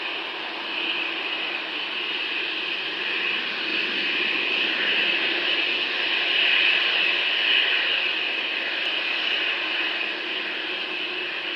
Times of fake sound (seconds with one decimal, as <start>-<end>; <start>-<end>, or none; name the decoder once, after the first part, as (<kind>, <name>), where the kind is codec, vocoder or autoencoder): none